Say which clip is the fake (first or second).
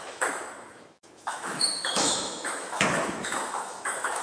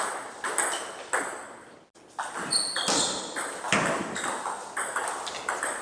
first